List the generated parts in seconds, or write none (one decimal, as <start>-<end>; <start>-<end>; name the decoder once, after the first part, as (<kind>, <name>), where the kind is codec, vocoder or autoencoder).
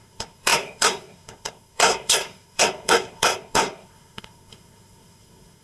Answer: 0.0-5.6 (codec, SNAC)